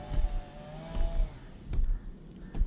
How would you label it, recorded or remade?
recorded